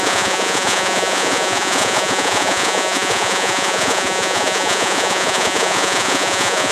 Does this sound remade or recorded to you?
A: remade